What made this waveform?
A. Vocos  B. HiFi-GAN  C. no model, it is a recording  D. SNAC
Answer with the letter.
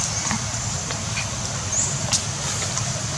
C